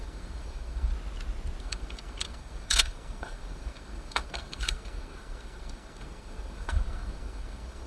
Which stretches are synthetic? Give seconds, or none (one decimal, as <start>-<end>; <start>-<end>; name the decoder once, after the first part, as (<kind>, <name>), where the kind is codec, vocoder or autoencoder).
0.0-0.9 (codec, SNAC); 1.6-7.9